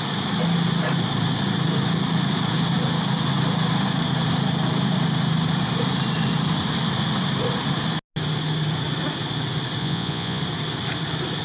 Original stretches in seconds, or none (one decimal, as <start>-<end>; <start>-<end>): 0.0-9.8; 10.4-11.4